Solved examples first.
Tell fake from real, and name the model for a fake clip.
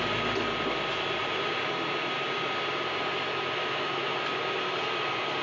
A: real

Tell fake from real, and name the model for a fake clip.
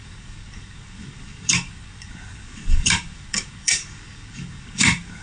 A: fake, codec, DAC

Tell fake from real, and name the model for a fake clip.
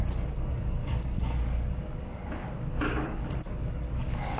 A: fake, codec, DAC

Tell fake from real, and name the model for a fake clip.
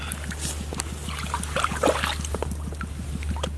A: real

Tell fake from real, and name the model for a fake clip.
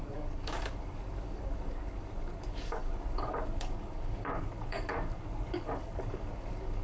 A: fake, codec, DAC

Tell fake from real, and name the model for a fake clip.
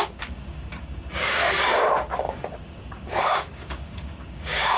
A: fake, codec, DAC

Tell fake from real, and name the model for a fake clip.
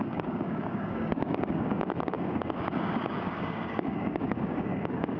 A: fake, codec, DAC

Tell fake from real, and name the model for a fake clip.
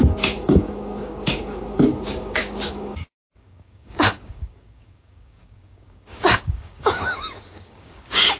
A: fake, codec, DAC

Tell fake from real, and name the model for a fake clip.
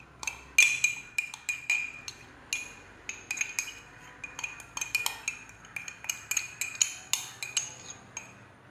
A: real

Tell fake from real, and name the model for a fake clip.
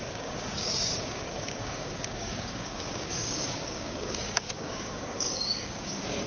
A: fake, codec, DAC